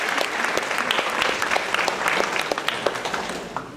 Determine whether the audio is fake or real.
real